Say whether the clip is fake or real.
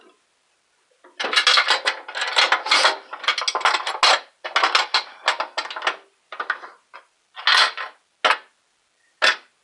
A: real